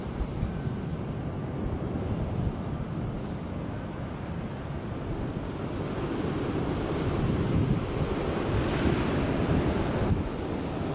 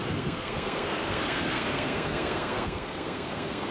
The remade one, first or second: second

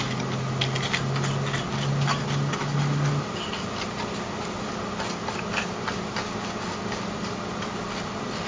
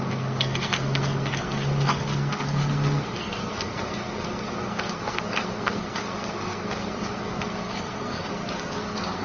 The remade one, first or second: second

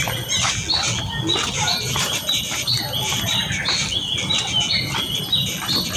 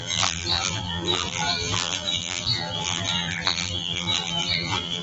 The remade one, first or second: second